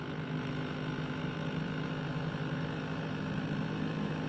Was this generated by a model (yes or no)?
yes